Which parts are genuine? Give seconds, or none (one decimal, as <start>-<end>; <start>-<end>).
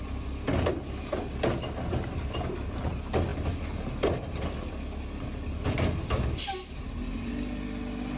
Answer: 0.0-8.2